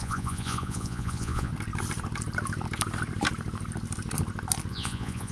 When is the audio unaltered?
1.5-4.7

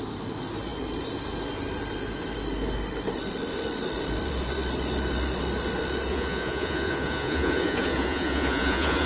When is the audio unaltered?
0.0-6.1

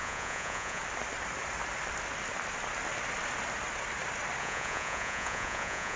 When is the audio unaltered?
0.8-4.4

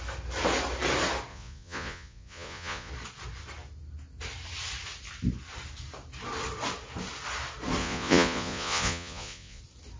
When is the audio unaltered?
0.0-1.3; 2.9-7.8; 9.6-10.0

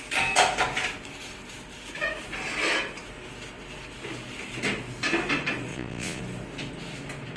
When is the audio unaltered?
0.0-5.7; 6.2-7.4

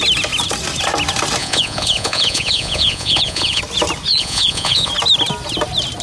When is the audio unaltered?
0.0-1.4; 3.6-4.1; 4.9-6.0

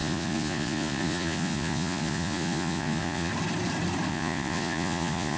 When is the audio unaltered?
3.3-4.1